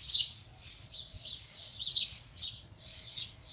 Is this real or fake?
fake